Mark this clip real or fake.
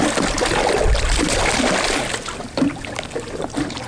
real